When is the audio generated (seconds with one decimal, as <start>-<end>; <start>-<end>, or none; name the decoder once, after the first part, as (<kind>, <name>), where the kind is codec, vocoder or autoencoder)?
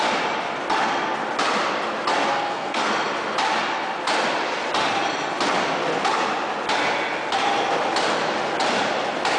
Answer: 2.3-2.9 (codec, SNAC)